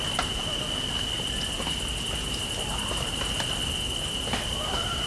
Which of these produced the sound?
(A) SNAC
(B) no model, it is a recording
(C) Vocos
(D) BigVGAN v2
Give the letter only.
B